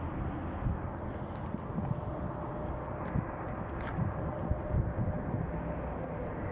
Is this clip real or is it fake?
real